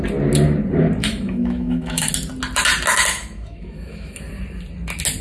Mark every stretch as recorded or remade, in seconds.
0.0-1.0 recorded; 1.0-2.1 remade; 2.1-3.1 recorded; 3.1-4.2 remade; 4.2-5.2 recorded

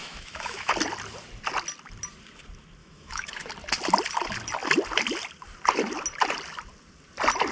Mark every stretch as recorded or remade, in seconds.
0.0-0.7 remade; 0.7-2.8 recorded; 2.8-3.5 remade; 3.5-7.5 recorded

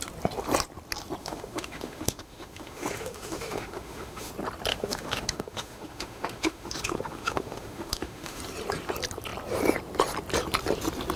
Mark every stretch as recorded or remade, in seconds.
0.0-1.2 recorded; 1.2-4.3 remade; 4.3-4.7 recorded; 4.7-8.4 remade; 8.4-11.2 recorded

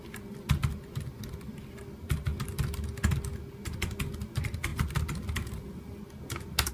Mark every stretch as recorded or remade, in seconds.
0.0-6.7 recorded

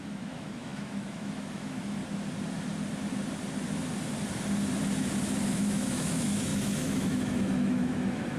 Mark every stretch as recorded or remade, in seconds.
0.0-2.0 remade; 2.0-5.5 recorded; 5.5-8.4 remade

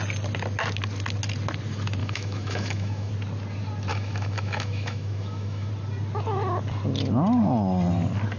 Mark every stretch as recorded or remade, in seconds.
0.0-2.0 recorded; 2.0-3.1 remade; 3.1-3.9 recorded; 3.9-5.7 remade; 5.7-8.4 recorded

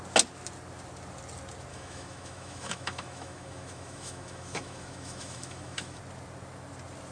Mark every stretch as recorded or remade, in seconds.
0.0-1.7 recorded; 1.7-6.0 remade; 6.0-7.1 recorded